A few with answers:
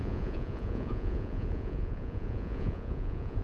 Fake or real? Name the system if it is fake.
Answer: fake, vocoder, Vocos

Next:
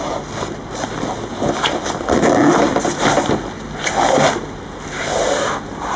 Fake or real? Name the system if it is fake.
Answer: real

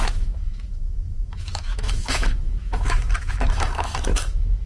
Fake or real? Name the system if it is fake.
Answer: fake, autoencoder, DAC-VAE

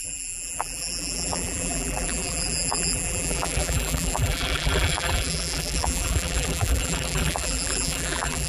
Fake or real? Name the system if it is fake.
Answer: fake, vocoder, BigVGAN v2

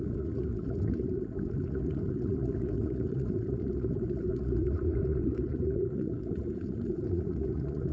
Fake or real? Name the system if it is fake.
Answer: fake, vocoder, Vocos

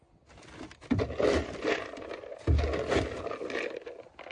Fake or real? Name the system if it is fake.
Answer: real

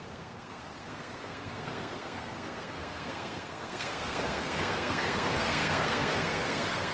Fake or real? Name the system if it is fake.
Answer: fake, codec, SNAC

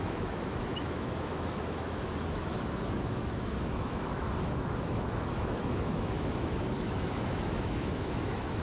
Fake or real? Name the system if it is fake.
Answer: fake, autoencoder, DAC-VAE